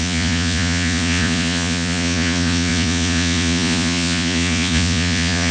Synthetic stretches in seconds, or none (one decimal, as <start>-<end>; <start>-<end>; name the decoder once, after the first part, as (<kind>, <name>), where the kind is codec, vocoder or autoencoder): 0.0-5.5 (vocoder, Vocos)